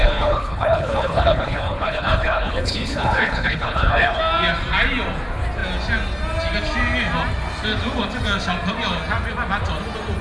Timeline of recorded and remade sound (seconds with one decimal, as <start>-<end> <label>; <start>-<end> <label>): 0.0-4.2 remade; 4.2-10.2 recorded

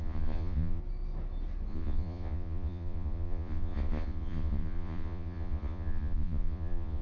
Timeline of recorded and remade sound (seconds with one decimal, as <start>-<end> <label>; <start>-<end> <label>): 0.0-0.8 remade; 0.8-1.7 recorded; 1.7-7.0 remade